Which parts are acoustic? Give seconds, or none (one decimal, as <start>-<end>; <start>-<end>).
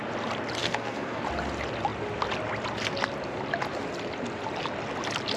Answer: 0.0-0.6; 1.2-5.4